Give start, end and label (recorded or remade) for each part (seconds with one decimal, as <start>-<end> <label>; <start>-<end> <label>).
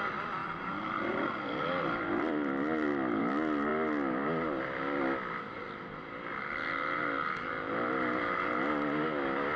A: 0.0-0.4 recorded; 0.4-3.2 remade; 3.2-9.6 recorded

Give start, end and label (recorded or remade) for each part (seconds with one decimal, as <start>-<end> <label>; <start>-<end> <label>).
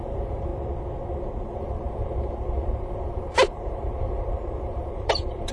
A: 0.0-0.5 remade; 0.5-1.4 recorded; 1.4-5.5 remade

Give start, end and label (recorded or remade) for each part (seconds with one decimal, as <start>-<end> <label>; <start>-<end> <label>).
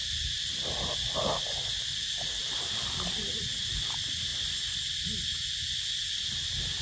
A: 0.0-0.8 remade; 0.8-2.4 recorded; 2.4-3.4 remade; 3.4-6.8 recorded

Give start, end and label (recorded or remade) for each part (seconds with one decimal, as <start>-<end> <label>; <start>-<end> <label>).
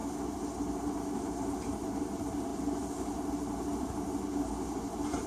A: 0.0-0.8 recorded; 0.8-5.3 remade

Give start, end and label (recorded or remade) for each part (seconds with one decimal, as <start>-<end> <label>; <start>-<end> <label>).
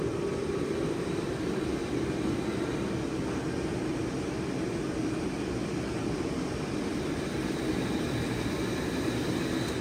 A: 0.0-1.8 remade; 1.8-5.4 recorded; 5.4-9.8 remade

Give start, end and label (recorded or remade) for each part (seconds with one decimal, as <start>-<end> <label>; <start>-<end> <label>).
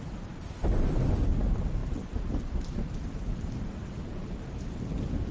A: 0.0-0.6 remade; 0.6-1.3 recorded; 1.3-5.3 remade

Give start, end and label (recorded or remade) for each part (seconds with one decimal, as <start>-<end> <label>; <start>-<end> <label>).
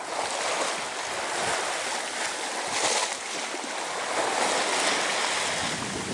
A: 0.0-6.1 recorded